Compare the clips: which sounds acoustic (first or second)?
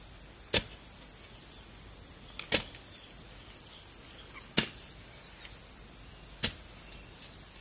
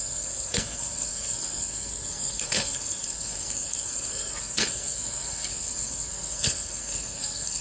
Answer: first